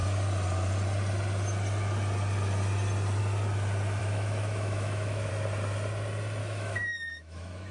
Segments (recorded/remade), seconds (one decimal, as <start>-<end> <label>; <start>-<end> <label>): 0.0-4.0 recorded; 4.0-5.3 remade; 5.3-6.4 recorded; 6.4-7.7 remade